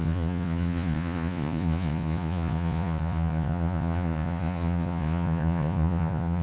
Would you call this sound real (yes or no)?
no